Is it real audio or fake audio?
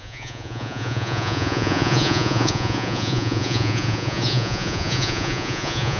fake